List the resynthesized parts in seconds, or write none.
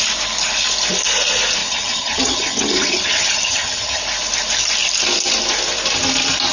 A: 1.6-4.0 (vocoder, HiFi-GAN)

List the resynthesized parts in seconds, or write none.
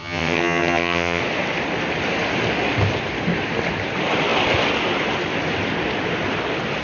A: 0.0-1.2 (vocoder, HiFi-GAN)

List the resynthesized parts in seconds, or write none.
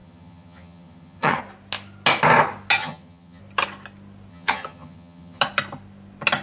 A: 0.0-1.4 (vocoder, HiFi-GAN); 2.8-3.4; 4.3-5.4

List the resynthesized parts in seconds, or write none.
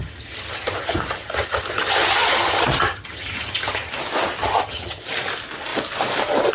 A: 0.0-3.9 (vocoder, HiFi-GAN); 4.4-5.0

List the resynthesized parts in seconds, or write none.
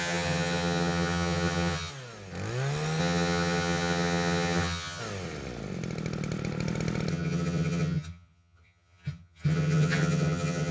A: 0.0-1.9 (vocoder, HiFi-GAN); 3.0-5.0; 7.1-10.7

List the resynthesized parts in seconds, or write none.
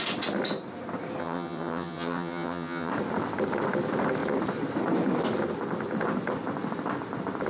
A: 1.2-2.9 (vocoder, HiFi-GAN)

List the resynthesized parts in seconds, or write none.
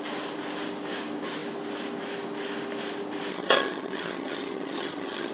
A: 3.3-5.3 (vocoder, HiFi-GAN)